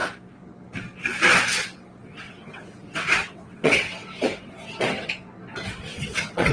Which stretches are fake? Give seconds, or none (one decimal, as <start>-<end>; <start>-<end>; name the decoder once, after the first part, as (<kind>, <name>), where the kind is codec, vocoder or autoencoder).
2.0-5.1 (vocoder, WaveNeXt); 5.5-6.5